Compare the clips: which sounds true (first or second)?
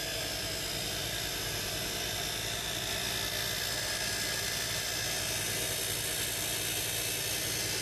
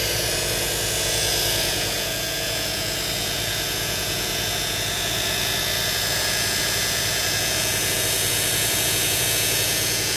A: first